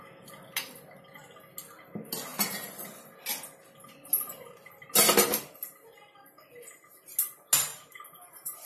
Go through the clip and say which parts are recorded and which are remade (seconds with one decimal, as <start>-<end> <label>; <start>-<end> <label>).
0.0-7.7 recorded; 7.7-8.7 remade